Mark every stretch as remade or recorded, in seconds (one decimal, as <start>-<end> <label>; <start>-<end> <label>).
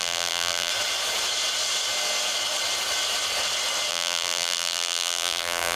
0.0-0.7 remade; 0.7-3.9 recorded; 3.9-5.8 remade